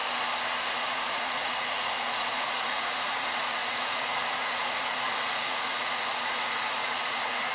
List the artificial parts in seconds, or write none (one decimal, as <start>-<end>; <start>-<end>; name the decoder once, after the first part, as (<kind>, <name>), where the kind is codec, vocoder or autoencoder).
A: 0.7-7.5 (vocoder, Vocos)